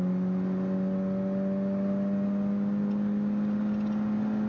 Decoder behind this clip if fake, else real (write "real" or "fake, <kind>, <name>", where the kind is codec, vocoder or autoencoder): real